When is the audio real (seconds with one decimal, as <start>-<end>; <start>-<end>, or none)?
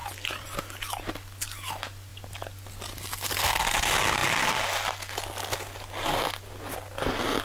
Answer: 0.0-7.4